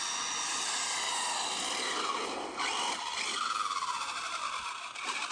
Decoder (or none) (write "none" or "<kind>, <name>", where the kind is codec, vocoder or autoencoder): none